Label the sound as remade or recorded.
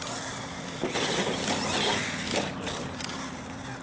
recorded